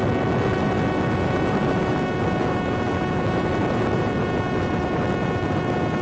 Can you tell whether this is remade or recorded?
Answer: recorded